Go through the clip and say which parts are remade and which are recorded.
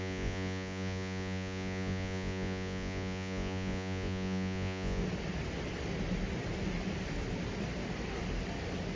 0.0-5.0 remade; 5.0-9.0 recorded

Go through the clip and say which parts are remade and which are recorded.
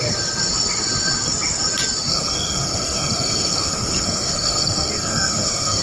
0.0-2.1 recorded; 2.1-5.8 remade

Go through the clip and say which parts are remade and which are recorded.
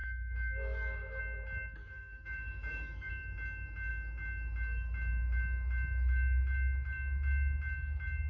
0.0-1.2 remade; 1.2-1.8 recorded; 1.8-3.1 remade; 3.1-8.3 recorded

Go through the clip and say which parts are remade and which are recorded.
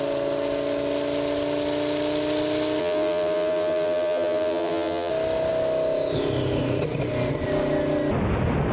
0.0-2.8 recorded; 2.8-5.1 remade; 5.1-8.7 recorded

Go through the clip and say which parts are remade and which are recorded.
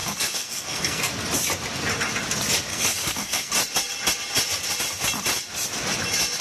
0.0-1.1 remade; 1.1-2.7 recorded; 2.7-3.5 remade; 3.5-6.4 recorded